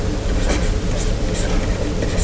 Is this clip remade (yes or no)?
no